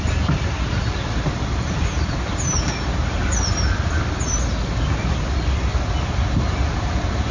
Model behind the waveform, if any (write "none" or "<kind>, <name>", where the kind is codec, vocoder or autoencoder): none